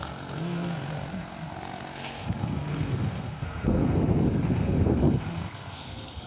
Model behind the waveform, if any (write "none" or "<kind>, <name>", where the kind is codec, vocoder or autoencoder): codec, SNAC